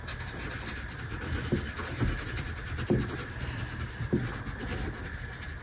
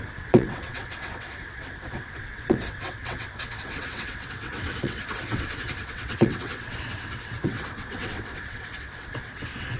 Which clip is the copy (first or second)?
second